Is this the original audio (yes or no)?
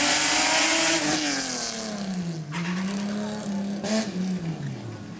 yes